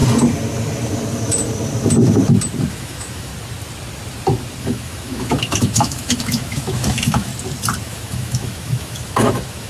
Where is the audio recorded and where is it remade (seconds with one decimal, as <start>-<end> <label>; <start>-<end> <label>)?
0.0-2.7 recorded; 2.7-3.3 remade; 3.3-4.6 recorded; 4.6-7.3 remade; 7.3-7.8 recorded; 7.8-9.7 remade